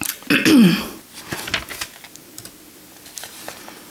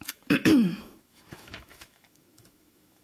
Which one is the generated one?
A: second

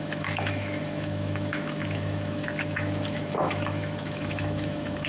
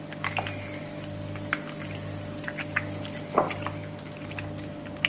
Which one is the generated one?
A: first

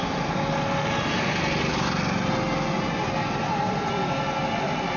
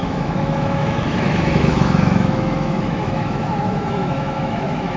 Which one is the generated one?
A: second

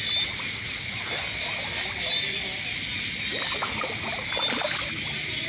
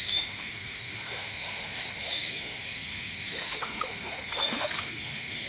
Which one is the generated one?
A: second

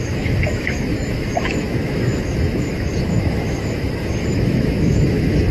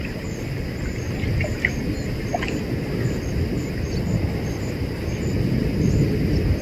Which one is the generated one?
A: first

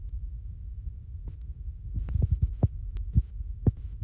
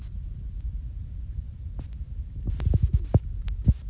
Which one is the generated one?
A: first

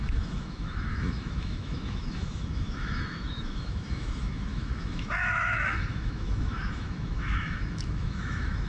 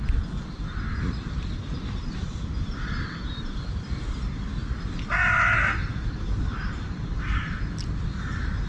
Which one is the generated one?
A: first